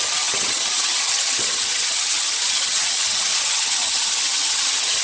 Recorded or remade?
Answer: remade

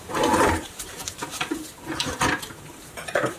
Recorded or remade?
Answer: remade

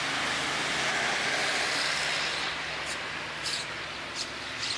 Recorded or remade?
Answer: recorded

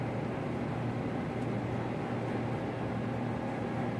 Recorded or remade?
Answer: recorded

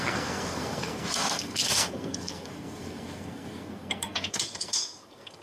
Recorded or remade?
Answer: remade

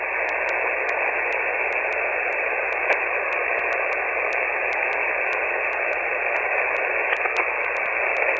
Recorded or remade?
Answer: recorded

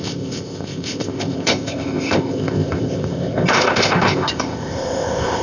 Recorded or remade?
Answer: remade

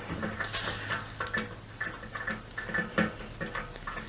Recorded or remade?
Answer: recorded